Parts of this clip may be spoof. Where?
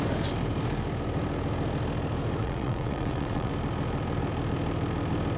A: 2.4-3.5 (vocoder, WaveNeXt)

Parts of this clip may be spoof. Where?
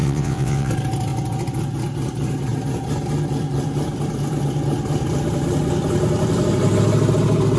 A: 0.0-0.7 (vocoder, WaveNeXt)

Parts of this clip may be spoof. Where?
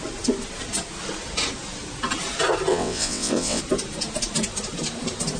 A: 2.7-3.6 (vocoder, WaveNeXt)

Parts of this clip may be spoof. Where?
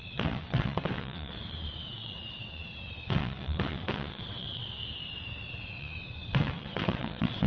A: 0.0-4.8 (vocoder, WaveNeXt); 5.5-7.5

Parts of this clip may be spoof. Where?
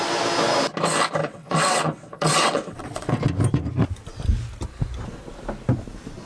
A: 1.2-3.2 (vocoder, WaveNeXt)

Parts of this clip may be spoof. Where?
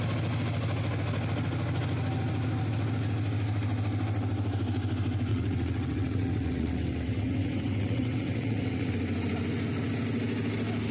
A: 5.3-8.9 (vocoder, WaveNeXt)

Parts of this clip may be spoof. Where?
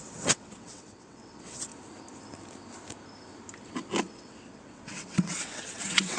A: 0.0-1.7 (vocoder, WaveNeXt); 4.0-6.2